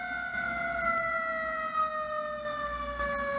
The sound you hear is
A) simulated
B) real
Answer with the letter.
B